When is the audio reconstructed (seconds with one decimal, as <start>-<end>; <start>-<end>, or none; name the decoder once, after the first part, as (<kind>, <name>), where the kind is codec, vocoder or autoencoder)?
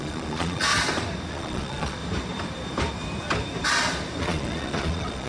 0.0-0.7 (vocoder, Vocos); 1.3-2.0; 4.2-5.3